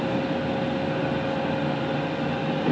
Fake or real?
real